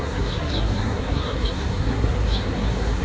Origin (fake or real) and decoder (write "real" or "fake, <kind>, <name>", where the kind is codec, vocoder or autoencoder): fake, codec, SNAC